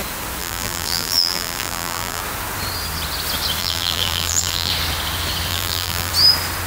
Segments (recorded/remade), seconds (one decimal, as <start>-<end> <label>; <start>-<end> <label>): 0.0-0.4 recorded; 0.4-2.2 remade; 2.2-3.6 recorded; 3.6-4.7 remade; 4.7-5.5 recorded; 5.5-6.1 remade; 6.1-6.7 recorded